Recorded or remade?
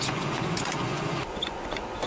remade